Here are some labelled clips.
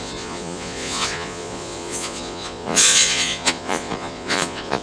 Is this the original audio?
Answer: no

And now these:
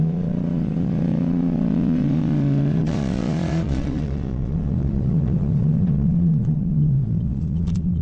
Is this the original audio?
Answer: no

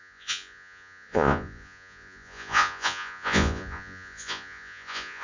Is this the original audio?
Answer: no